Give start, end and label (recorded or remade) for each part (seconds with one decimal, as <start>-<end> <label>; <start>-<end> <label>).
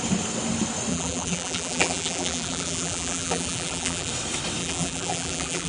0.0-0.9 recorded; 0.9-4.1 remade; 4.1-4.6 recorded; 4.6-5.7 remade